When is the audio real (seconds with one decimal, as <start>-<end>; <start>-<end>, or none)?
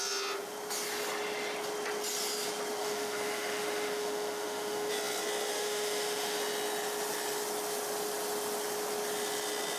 0.0-2.8; 4.9-5.5; 6.4-9.8